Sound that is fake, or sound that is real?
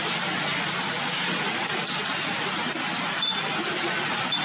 real